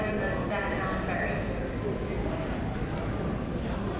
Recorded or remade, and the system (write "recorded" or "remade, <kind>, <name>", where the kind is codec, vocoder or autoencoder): recorded